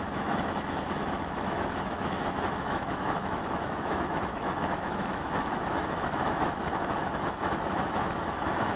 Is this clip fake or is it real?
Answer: fake